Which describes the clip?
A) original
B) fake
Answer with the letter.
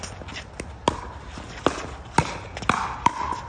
A